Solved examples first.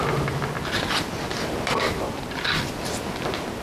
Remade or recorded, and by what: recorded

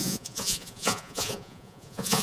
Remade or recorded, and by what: remade, vocoder, Vocos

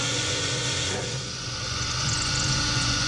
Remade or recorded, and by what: remade, vocoder, Vocos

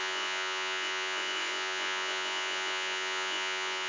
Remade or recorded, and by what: remade, vocoder, Vocos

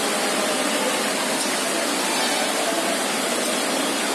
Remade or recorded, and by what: recorded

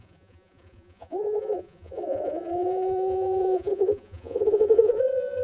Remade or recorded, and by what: remade, vocoder, Vocos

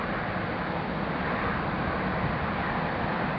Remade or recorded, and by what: recorded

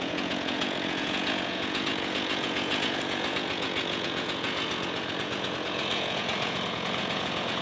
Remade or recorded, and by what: remade, vocoder, Vocos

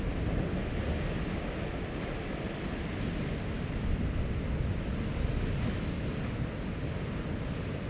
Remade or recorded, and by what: recorded